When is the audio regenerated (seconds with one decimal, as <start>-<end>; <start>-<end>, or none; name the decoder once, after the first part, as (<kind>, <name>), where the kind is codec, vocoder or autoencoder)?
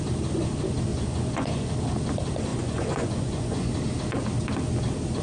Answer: 0.9-1.7 (vocoder, Vocos); 2.5-3.7